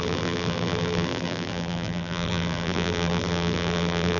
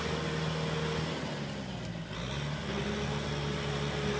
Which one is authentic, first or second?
second